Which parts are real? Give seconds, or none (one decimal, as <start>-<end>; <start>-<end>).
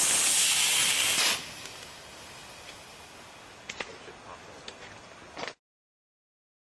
0.0-6.8